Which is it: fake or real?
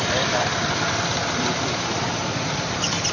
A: fake